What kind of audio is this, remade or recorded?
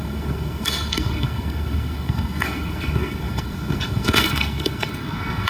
remade